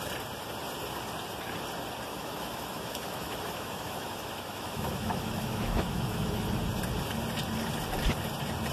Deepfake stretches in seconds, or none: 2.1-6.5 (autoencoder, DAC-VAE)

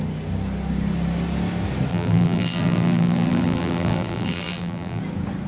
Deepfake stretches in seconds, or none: 1.9-5.0 (vocoder, BigVGAN v2)

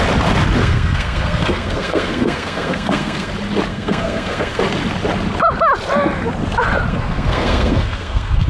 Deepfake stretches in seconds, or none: 0.6-3.3 (codec, SNAC); 3.7-4.6; 6.9-8.5